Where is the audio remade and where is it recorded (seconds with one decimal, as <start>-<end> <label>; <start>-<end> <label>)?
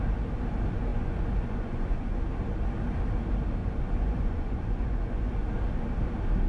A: 0.0-0.9 recorded; 0.9-2.2 remade; 2.2-3.6 recorded; 3.6-5.3 remade; 5.3-6.5 recorded